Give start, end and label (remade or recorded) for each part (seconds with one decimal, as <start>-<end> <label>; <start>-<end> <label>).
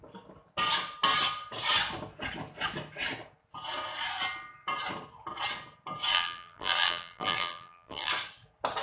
0.0-6.1 recorded; 6.1-8.1 remade; 8.1-8.8 recorded